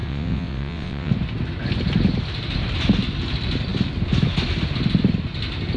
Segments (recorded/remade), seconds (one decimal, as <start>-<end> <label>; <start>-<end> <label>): 0.0-1.1 remade; 1.1-5.8 recorded